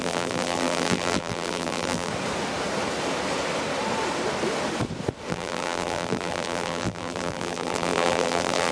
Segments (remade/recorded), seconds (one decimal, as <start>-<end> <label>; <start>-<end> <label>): 0.0-2.1 remade; 2.1-5.3 recorded; 5.3-8.7 remade